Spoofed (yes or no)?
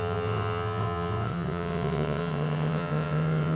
yes